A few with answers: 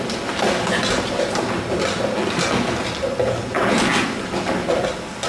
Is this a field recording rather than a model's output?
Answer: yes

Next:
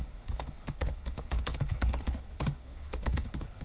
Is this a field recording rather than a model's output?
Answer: no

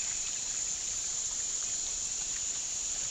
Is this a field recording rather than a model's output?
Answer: no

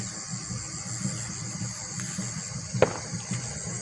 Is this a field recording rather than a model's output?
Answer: yes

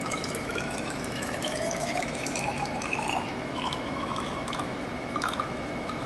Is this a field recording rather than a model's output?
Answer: no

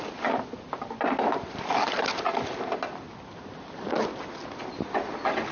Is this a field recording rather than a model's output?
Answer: yes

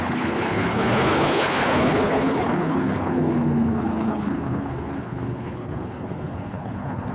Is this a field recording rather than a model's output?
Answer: no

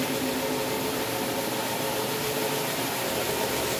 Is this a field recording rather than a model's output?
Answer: yes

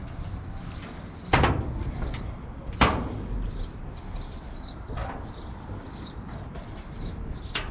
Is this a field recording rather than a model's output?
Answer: yes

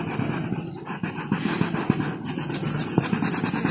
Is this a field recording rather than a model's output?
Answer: yes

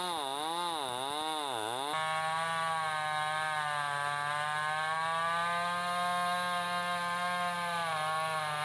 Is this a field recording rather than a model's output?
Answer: yes